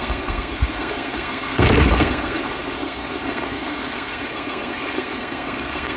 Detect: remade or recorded remade